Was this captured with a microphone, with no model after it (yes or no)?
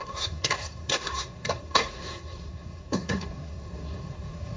no